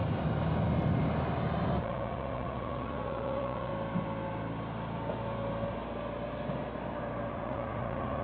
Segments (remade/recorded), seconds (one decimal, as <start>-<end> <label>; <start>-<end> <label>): 0.0-1.8 recorded; 1.8-3.7 remade; 3.7-7.3 recorded; 7.3-8.2 remade